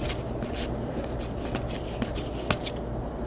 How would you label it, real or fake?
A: real